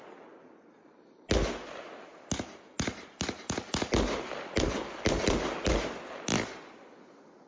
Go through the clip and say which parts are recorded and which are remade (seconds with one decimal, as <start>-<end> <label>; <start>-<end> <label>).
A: 0.0-7.5 recorded